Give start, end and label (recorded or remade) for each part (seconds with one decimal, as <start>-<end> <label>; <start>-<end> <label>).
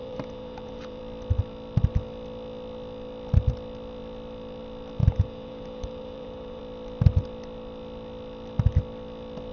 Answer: 0.0-1.0 remade; 1.0-5.0 recorded; 5.0-6.6 remade; 6.6-9.5 recorded